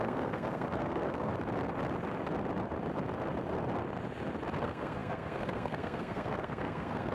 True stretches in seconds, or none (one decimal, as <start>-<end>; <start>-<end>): 1.3-4.6